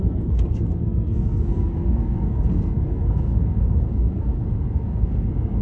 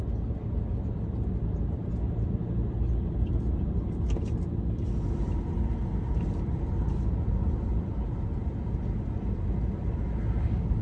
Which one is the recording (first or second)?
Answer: second